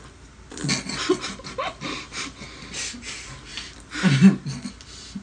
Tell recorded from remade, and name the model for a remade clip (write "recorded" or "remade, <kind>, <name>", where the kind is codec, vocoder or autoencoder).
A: recorded